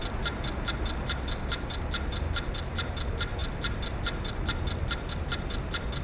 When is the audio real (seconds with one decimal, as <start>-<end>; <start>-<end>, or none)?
0.0-6.0